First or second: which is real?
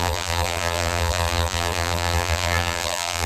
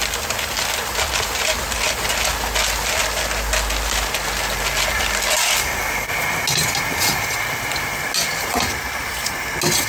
second